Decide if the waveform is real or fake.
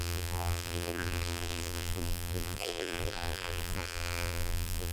fake